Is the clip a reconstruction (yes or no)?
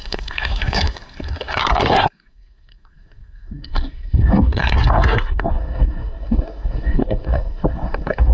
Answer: yes